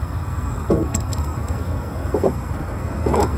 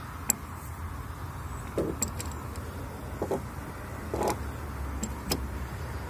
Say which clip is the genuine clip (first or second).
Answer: second